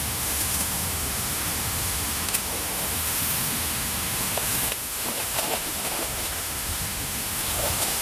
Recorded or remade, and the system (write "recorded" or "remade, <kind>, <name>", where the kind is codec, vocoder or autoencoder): remade, autoencoder, DAC-VAE